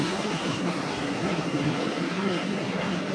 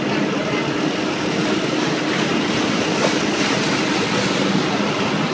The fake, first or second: first